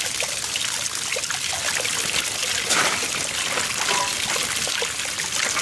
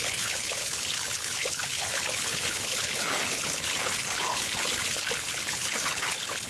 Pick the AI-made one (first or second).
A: second